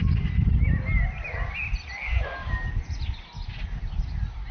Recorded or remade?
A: recorded